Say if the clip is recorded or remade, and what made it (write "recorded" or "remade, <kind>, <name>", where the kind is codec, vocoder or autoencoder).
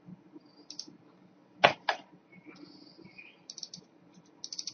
recorded